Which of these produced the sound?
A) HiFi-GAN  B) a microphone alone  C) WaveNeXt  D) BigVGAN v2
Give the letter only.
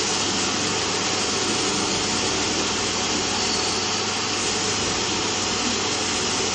B